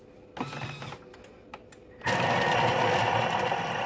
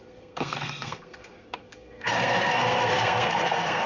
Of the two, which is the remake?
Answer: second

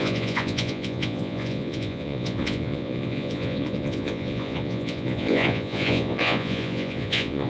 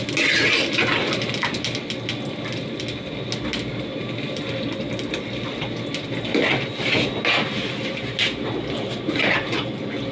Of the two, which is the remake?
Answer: first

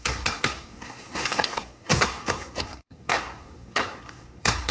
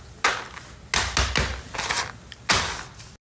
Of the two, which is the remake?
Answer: first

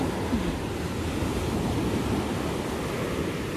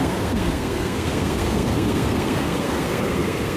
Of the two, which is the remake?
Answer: second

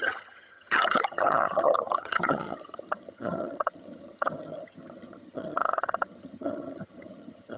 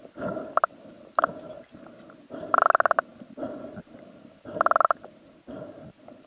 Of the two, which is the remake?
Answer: first